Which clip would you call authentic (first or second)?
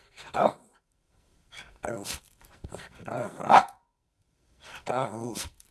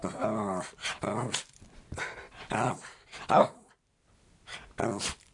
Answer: second